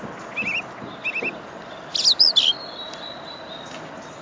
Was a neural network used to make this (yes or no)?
no